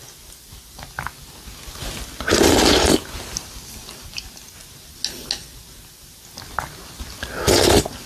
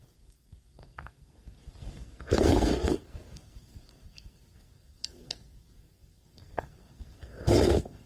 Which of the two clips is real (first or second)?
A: first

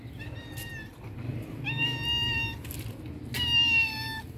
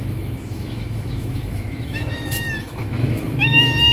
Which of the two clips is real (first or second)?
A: first